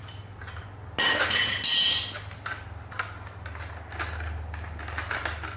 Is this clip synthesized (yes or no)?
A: no